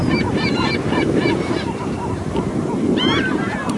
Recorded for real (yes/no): no